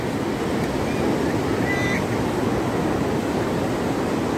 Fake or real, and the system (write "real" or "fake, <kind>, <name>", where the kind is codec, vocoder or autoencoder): real